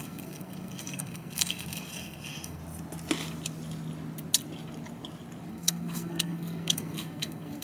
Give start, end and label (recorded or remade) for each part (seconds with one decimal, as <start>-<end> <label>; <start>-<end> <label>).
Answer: 0.0-2.6 remade; 2.6-5.5 recorded; 5.5-7.6 remade

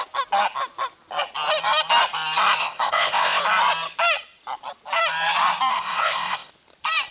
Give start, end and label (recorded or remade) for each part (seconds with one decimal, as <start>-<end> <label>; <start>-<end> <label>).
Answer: 0.0-2.6 recorded; 2.6-3.4 remade; 3.4-5.7 recorded; 5.7-6.5 remade; 6.5-7.1 recorded